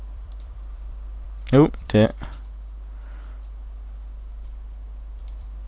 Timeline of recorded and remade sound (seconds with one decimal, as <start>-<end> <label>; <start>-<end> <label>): 0.0-2.1 remade; 2.1-5.2 recorded; 5.2-5.7 remade